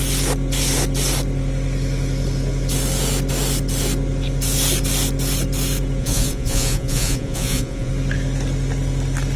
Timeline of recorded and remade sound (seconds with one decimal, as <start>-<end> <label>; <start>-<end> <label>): 0.0-6.0 recorded; 6.0-7.9 remade; 7.9-9.4 recorded